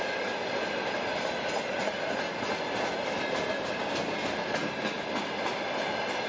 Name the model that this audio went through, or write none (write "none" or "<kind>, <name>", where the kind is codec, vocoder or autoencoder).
none